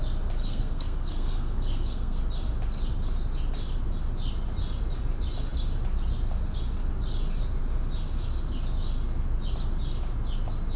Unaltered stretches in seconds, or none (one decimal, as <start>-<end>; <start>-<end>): 0.0-0.4; 2.2-10.8